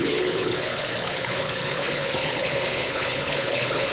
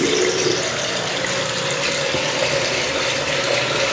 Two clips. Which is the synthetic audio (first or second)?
first